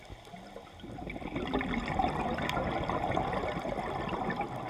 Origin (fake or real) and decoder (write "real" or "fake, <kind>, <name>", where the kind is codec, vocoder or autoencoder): real